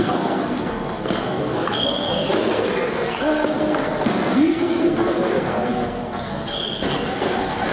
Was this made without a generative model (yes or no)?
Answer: no